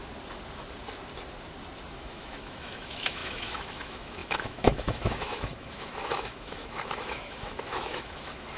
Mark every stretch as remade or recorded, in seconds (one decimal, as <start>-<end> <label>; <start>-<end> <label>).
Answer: 0.0-1.9 recorded; 1.9-8.6 remade